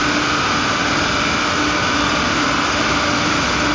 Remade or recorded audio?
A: recorded